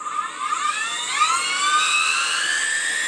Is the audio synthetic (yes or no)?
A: no